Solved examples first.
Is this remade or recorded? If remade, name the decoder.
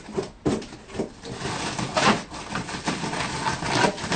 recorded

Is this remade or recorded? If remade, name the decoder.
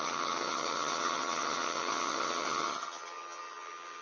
remade, vocoder, HiFi-GAN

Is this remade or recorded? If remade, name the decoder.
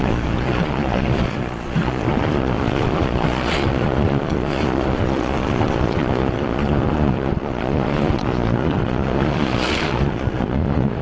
remade, vocoder, Vocos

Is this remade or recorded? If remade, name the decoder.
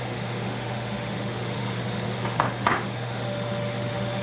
remade, autoencoder, DAC-VAE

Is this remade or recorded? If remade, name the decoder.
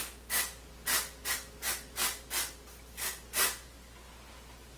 recorded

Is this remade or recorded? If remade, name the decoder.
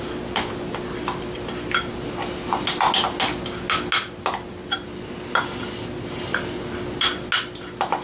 recorded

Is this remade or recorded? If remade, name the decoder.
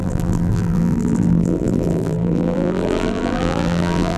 remade, vocoder, BigVGAN v2